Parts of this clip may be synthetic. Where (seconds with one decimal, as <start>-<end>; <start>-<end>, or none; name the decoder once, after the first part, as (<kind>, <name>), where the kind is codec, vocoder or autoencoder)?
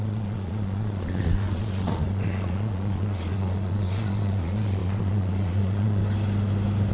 0.0-6.0 (vocoder, Vocos)